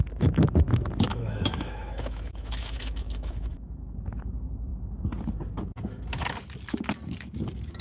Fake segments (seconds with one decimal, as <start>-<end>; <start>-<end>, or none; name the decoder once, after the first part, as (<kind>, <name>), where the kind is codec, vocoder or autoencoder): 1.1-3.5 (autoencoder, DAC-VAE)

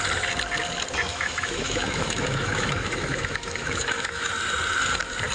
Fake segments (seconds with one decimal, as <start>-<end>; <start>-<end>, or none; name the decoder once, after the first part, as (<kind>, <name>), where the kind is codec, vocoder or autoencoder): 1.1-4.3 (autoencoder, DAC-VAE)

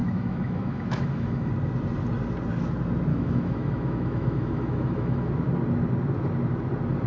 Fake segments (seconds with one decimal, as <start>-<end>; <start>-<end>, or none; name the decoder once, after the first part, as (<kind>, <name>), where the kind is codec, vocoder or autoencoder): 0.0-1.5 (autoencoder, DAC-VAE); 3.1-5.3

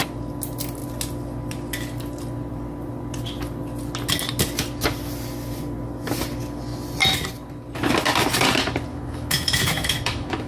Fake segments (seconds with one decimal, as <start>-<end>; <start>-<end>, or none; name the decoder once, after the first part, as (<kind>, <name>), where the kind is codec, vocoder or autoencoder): 8.9-10.5 (autoencoder, DAC-VAE)